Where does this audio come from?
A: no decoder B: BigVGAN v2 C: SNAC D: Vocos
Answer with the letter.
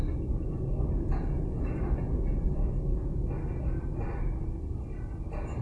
A